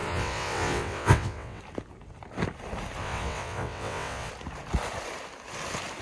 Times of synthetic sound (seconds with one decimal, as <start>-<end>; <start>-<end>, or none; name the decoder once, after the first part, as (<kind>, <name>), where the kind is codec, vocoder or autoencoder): 0.0-1.6 (vocoder, WaveNeXt); 3.0-4.3

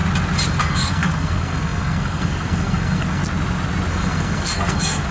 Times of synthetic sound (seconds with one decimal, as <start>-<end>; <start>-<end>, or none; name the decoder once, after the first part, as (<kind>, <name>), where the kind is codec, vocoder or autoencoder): 0.6-3.2 (codec, SNAC); 3.9-5.1

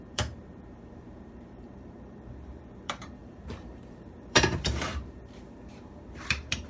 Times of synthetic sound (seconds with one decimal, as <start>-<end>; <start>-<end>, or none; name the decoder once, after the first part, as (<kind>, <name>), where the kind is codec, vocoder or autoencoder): 0.0-6.7 (vocoder, BigVGAN v2)

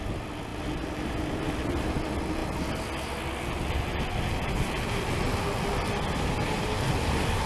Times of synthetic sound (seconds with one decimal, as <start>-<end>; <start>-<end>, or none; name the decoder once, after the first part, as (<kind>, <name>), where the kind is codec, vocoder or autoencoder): none

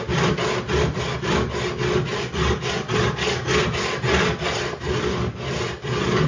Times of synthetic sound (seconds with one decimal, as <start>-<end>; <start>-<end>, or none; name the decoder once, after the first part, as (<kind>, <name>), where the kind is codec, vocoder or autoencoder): none

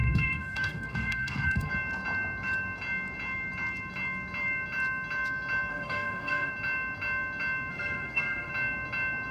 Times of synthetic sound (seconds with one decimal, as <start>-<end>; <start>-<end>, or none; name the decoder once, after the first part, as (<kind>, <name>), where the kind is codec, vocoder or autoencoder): 0.0-1.7 (codec, SNAC); 5.7-6.5; 7.7-8.5